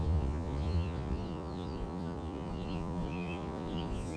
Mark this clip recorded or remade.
remade